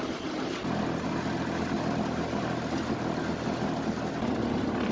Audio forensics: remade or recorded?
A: recorded